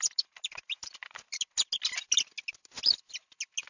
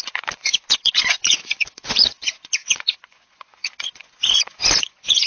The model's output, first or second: second